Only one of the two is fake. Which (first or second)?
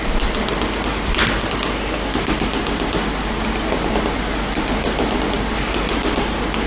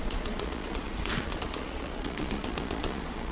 second